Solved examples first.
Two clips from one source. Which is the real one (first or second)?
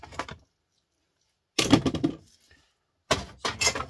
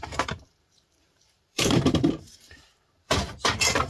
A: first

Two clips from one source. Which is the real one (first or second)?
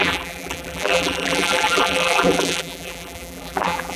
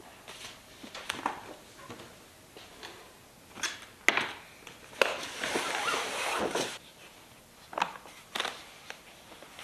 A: second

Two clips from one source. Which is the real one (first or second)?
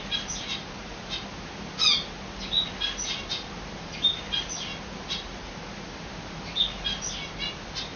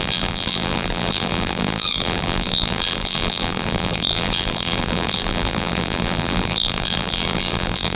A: first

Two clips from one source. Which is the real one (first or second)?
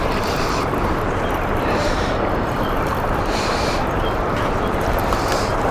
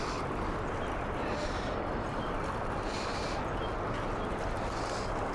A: second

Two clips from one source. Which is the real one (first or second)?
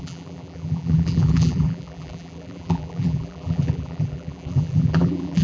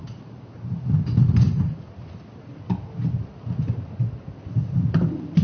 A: second